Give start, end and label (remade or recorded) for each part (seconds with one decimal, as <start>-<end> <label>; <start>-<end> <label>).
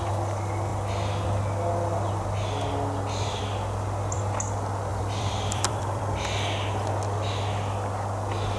0.0-4.9 recorded; 4.9-6.0 remade; 6.0-8.6 recorded